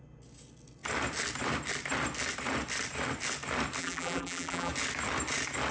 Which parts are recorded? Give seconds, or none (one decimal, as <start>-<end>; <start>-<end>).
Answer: 0.0-3.8; 4.7-5.7

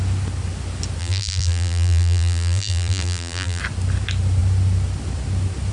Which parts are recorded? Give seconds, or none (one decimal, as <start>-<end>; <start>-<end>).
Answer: 0.0-1.0; 3.6-5.7

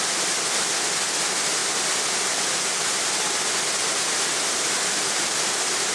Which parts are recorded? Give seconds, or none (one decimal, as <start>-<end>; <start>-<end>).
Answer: 0.0-5.9

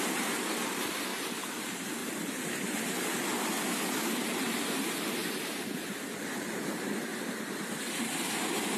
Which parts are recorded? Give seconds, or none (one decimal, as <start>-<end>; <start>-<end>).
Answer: 1.1-1.6; 2.0-4.0; 5.2-6.2; 7.1-7.7

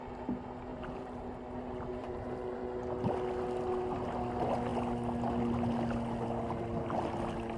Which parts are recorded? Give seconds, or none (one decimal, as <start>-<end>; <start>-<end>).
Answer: 0.0-0.7; 1.3-2.0; 2.6-7.6